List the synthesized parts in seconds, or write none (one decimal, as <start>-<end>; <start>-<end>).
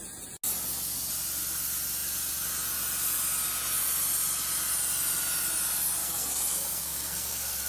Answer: 6.0-7.7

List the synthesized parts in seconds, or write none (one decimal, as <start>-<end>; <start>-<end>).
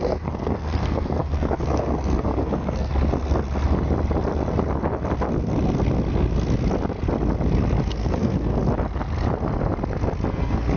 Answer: 0.0-2.9; 7.9-8.5; 10.3-10.8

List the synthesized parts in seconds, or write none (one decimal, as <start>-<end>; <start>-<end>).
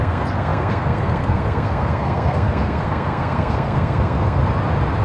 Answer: 0.0-4.4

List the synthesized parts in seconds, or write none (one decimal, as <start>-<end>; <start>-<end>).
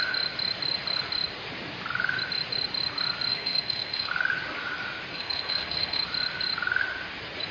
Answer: 3.3-4.1; 5.1-6.0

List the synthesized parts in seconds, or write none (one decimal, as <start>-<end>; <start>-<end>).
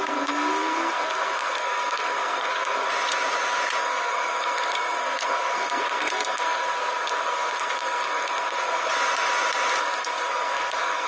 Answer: 0.0-2.9; 3.8-8.9; 9.8-11.1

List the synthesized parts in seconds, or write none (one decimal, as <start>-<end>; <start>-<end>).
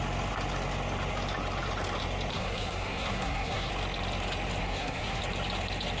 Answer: 2.3-3.7; 4.6-5.2